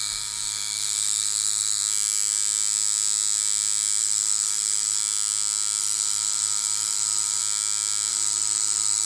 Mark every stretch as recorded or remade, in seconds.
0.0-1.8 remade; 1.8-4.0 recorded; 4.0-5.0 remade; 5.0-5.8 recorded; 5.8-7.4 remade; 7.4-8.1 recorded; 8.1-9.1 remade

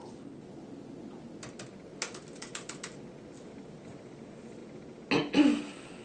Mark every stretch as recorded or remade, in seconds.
0.0-6.0 recorded